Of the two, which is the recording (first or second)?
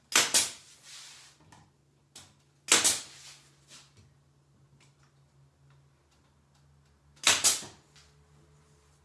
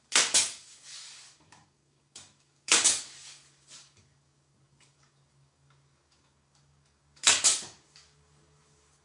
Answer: first